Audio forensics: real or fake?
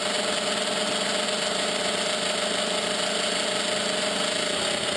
real